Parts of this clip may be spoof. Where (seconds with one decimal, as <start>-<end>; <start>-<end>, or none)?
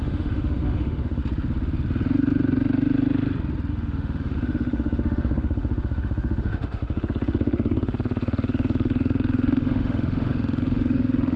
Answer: 0.0-1.2; 3.7-11.4